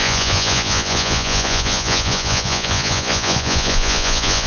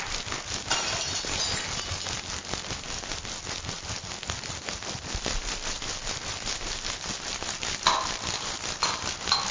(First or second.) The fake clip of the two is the first